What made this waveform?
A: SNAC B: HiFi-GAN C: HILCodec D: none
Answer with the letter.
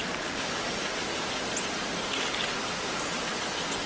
D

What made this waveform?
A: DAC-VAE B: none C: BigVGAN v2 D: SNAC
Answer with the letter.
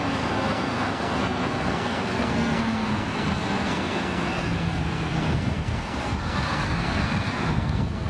D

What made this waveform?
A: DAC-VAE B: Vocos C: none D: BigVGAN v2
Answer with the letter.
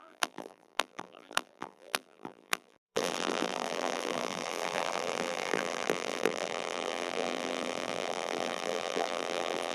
D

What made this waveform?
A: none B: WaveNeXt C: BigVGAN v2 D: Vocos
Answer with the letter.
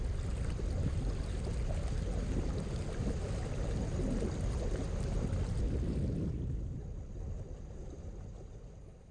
A